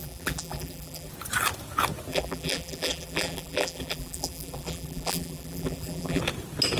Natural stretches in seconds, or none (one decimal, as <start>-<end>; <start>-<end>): 1.1-2.1; 6.2-6.8